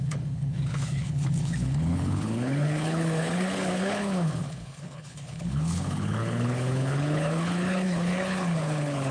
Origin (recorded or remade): remade